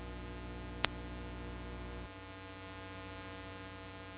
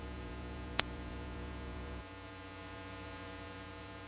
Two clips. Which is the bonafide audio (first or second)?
first